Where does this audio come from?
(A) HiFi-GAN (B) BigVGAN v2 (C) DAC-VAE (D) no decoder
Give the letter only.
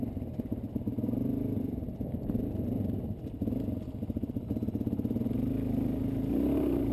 D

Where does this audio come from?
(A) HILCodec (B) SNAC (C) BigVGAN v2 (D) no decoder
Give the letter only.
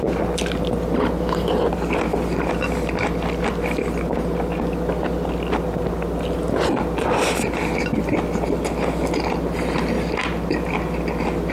C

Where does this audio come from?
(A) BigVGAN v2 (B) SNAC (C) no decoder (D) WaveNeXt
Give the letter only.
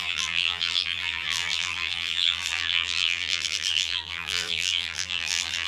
A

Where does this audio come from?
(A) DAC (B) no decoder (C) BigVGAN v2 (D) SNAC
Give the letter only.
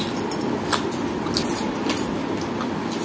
B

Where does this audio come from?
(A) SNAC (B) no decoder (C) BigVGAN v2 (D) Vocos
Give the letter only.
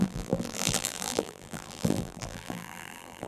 C